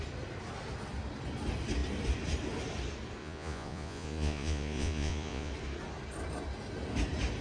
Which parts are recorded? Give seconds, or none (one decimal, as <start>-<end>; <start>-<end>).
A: 0.0-3.2; 5.5-7.4